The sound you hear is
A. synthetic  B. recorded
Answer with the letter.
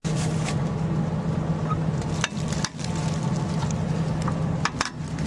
B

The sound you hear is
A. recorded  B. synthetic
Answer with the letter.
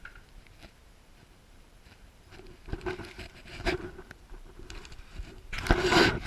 B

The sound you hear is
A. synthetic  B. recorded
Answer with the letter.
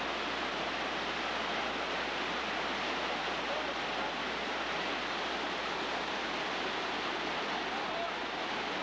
B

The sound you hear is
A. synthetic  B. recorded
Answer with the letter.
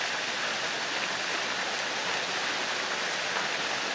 B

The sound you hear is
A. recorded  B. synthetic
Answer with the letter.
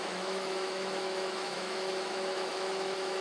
B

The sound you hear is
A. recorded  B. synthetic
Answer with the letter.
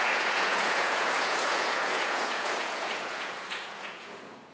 B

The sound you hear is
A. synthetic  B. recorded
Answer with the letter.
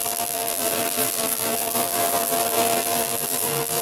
A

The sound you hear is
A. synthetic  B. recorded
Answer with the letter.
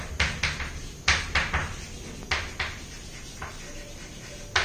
B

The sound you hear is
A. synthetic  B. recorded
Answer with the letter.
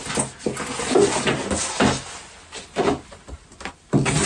B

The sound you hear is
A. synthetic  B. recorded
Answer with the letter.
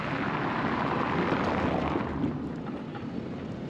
B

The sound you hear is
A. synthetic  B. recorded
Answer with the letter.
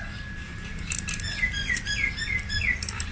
B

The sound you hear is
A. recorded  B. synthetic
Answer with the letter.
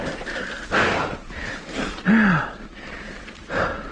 A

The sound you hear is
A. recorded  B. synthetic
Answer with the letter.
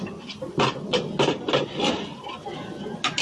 A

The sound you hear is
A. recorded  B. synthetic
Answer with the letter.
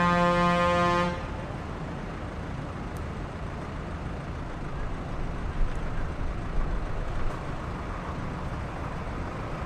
A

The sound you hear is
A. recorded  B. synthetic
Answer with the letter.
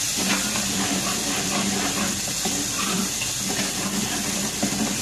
B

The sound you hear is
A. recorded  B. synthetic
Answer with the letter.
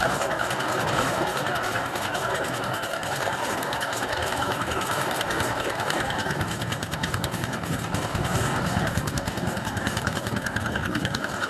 B